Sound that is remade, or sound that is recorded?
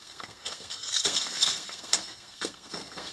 remade